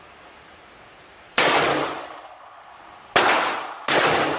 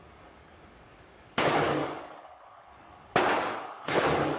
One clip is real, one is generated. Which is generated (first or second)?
second